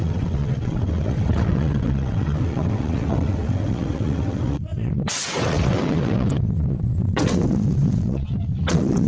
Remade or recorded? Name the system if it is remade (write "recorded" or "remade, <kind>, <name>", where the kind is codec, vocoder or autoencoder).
remade, vocoder, WaveNeXt